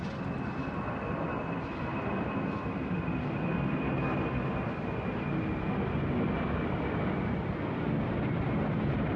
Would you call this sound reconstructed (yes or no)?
no